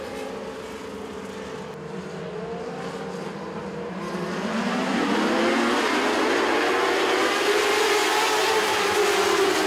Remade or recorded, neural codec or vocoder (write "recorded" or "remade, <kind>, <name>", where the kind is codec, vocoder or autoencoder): recorded